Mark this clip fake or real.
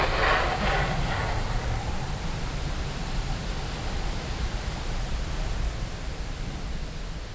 real